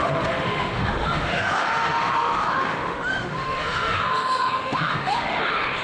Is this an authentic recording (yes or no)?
no